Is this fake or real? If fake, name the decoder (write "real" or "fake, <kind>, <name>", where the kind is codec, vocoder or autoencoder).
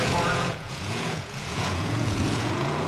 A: fake, vocoder, Vocos